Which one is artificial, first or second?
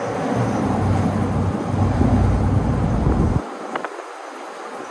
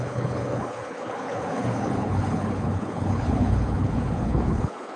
second